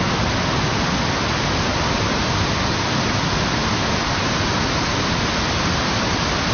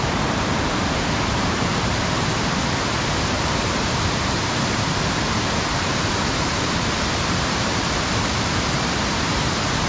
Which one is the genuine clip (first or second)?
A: first